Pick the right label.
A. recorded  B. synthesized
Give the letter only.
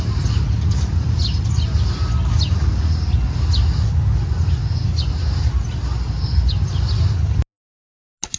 A